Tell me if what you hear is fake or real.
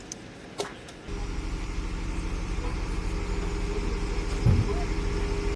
real